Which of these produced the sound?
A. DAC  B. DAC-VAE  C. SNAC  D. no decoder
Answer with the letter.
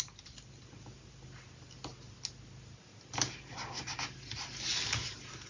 D